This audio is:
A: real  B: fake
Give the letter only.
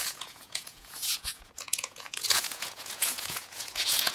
B